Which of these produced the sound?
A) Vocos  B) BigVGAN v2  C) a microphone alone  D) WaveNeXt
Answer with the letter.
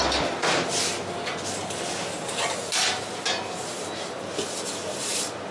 C